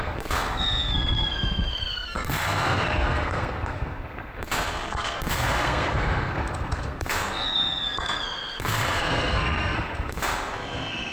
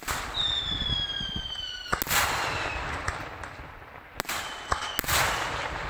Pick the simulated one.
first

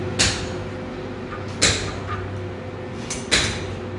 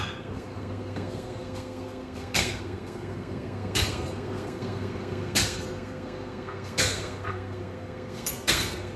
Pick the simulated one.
second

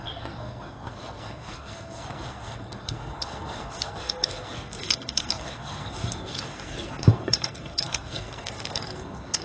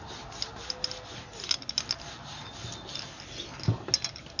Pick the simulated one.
first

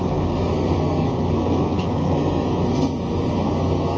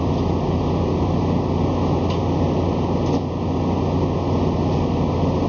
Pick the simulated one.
first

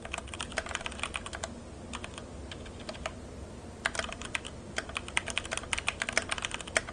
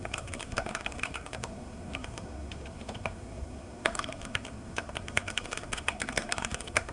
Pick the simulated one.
second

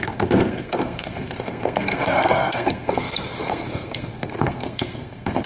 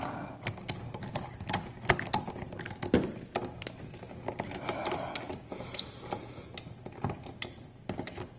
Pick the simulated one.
first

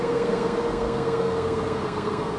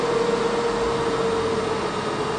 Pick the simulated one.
first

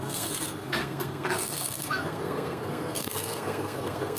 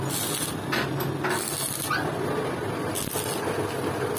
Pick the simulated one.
first